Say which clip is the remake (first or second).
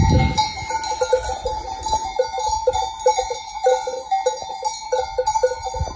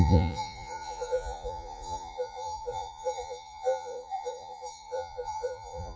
second